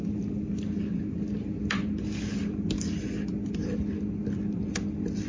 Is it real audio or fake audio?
real